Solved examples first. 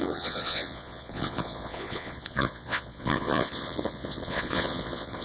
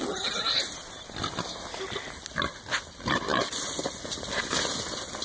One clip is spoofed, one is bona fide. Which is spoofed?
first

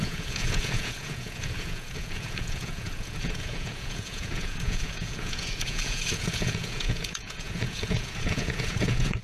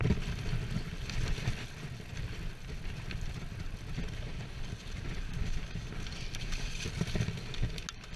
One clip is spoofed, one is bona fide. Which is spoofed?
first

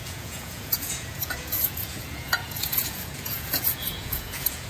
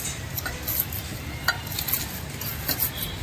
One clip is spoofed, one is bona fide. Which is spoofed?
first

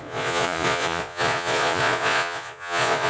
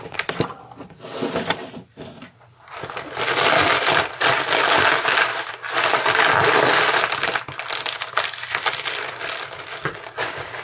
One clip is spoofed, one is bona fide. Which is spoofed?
first